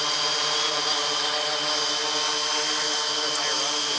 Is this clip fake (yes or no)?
no